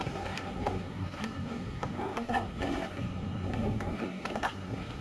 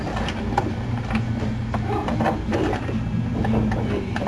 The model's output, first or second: first